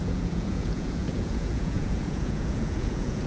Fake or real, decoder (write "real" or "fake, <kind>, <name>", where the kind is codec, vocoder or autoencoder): fake, vocoder, Vocos